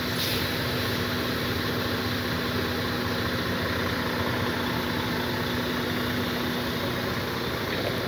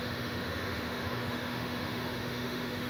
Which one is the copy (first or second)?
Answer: second